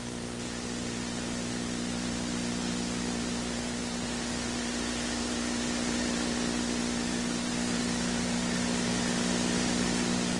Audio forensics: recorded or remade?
recorded